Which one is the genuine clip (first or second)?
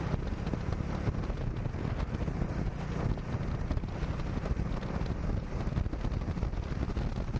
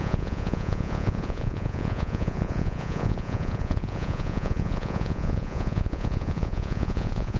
first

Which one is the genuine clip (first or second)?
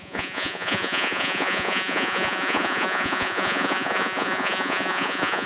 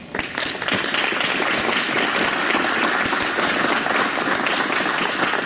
second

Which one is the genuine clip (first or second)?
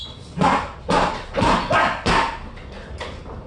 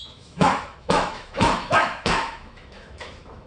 first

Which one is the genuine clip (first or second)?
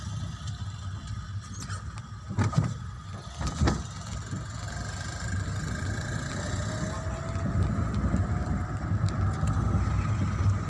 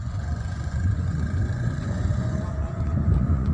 first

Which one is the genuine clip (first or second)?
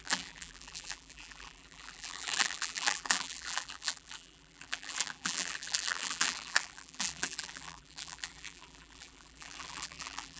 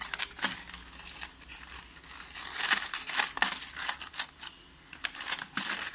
second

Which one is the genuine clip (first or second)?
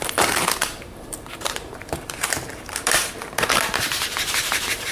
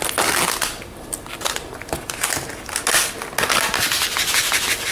second